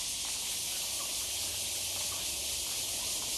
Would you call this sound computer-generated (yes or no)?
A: no